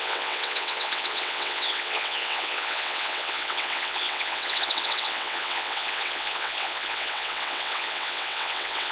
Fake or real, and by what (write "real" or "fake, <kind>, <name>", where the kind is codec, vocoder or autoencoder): fake, vocoder, WaveNeXt